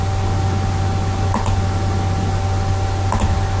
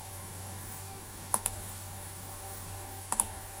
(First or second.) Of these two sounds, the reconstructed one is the second